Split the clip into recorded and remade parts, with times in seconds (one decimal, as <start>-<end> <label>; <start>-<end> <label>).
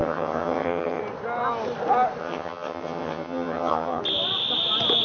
0.0-1.0 remade; 1.0-2.2 recorded; 2.2-4.0 remade; 4.0-5.0 recorded